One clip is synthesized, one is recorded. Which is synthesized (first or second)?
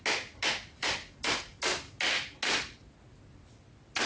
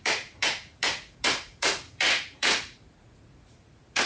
second